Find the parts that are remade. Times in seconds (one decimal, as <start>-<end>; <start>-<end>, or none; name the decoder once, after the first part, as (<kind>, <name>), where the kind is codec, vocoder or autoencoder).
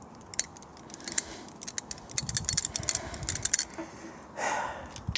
none